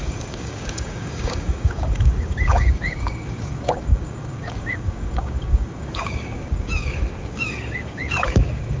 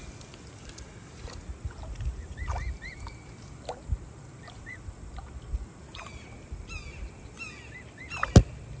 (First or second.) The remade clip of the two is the first